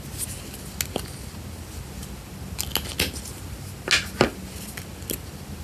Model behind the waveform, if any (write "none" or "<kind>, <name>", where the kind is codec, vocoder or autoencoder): none